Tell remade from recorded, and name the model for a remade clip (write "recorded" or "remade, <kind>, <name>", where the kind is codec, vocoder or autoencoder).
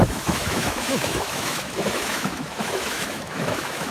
remade, autoencoder, DAC-VAE